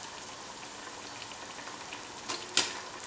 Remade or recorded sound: recorded